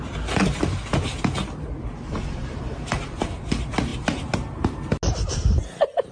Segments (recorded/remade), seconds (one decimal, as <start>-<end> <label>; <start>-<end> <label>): 0.0-6.1 recorded